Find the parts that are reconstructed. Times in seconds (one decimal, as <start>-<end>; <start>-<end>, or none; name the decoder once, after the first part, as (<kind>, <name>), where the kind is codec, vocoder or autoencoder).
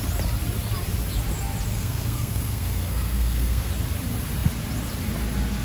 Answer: 1.7-3.7 (codec, SNAC)